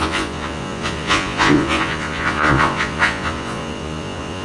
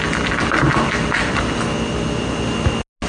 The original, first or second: second